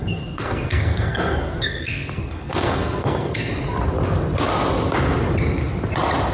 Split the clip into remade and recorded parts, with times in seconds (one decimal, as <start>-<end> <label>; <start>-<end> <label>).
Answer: 0.0-3.5 remade; 3.5-6.3 recorded